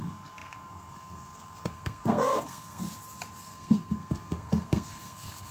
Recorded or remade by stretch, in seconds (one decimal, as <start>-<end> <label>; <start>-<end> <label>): 0.0-2.8 remade; 2.8-3.4 recorded; 3.4-5.5 remade